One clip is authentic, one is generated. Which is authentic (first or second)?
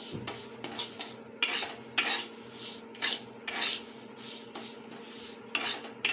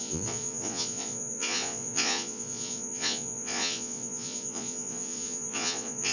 first